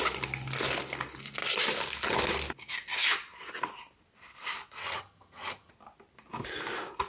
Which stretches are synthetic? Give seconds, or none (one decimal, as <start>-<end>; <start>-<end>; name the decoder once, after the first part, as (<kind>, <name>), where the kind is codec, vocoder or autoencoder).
4.8-5.7 (vocoder, HiFi-GAN)